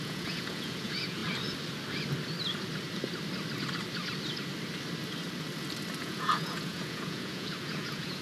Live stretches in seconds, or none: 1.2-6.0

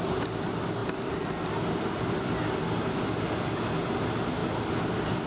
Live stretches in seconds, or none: 0.0-0.8; 2.4-5.3